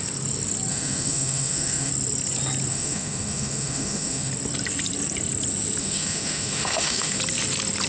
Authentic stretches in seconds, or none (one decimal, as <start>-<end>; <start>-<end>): 0.0-0.7; 1.9-2.7; 4.3-5.8; 7.2-7.9

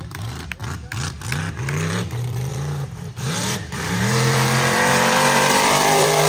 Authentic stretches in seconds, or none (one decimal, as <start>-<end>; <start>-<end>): 0.6-1.6

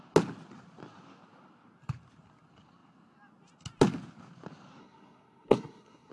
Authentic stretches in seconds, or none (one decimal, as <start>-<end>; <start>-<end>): 0.0-4.8

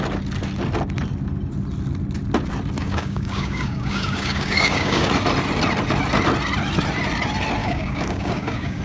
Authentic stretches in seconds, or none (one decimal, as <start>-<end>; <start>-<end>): 0.0-2.8; 5.1-7.6

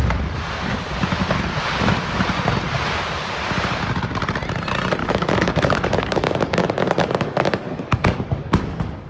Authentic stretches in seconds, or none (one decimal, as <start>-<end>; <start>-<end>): 0.0-5.0